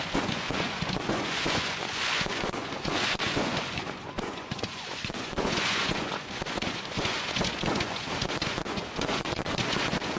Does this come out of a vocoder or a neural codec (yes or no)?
yes